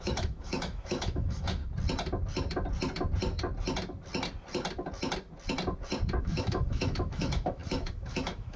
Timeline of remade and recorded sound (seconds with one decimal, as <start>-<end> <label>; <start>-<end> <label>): 0.0-1.6 remade; 1.6-6.2 recorded; 6.2-8.6 remade